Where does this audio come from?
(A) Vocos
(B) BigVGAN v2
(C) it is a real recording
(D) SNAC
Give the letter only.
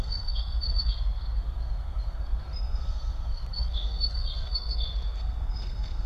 D